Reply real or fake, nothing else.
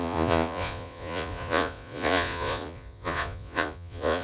fake